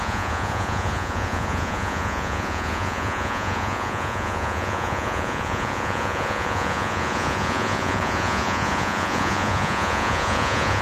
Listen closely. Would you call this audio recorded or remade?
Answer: remade